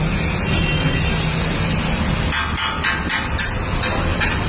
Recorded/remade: recorded